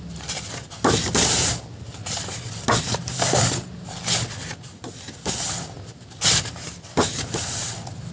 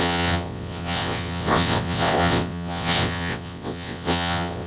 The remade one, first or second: second